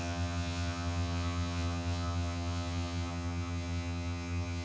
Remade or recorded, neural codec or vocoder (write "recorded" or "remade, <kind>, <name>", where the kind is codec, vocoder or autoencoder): remade, vocoder, HiFi-GAN